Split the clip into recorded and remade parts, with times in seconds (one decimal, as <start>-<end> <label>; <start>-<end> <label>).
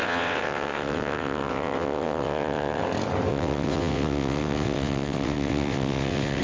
0.0-2.8 remade; 2.8-3.3 recorded; 3.3-6.4 remade